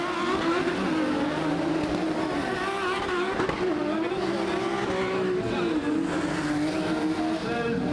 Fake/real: real